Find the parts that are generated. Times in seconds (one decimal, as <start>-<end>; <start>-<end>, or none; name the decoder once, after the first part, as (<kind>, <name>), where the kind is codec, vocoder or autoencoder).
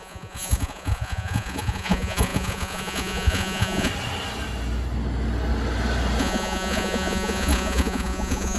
0.0-3.9 (vocoder, Vocos); 6.2-8.6